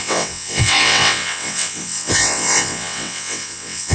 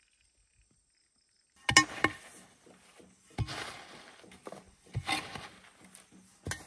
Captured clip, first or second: second